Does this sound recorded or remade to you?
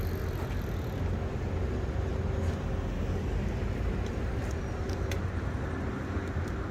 recorded